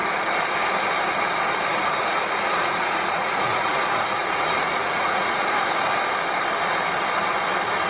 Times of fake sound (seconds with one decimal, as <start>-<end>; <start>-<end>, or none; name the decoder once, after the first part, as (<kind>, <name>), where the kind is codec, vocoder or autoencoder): 1.7-5.6 (vocoder, Vocos)